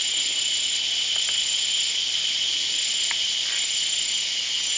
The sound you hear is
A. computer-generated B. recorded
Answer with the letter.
B